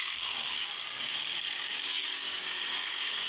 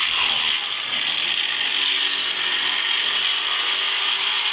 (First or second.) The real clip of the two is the second